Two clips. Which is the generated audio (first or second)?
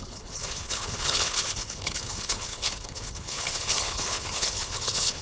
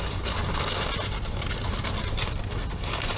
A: first